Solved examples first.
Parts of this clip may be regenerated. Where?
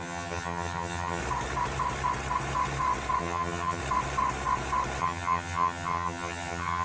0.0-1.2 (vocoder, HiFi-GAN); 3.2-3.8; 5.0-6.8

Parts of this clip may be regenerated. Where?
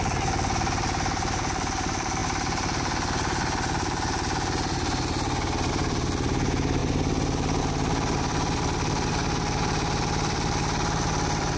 0.0-2.2 (vocoder, BigVGAN v2); 5.7-6.8; 7.6-11.6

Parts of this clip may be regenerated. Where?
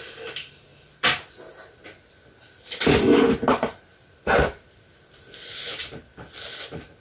0.7-1.3 (vocoder, BigVGAN v2)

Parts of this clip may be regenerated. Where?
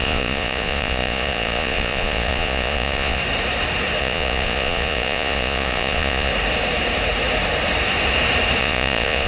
0.0-3.2 (vocoder, Vocos); 4.0-6.3; 8.6-9.3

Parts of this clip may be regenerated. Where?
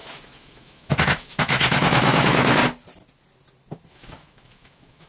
0.0-2.6 (autoencoder, DAC-VAE); 3.9-5.1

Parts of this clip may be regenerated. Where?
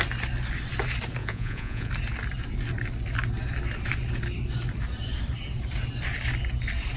1.2-1.9 (vocoder, Vocos)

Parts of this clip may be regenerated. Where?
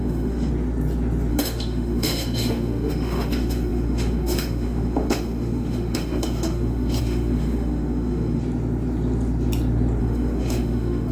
0.0-0.5 (autoencoder, DAC-VAE); 1.3-8.4; 10.0-11.1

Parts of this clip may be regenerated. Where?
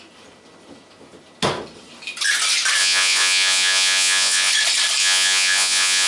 2.8-4.5 (vocoder, Vocos); 5.0-6.1